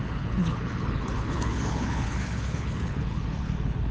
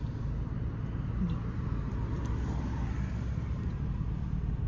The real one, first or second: second